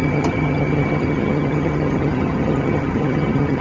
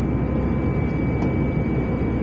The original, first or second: second